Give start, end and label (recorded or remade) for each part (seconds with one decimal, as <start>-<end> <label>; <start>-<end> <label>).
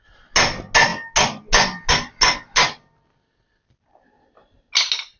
0.0-5.2 recorded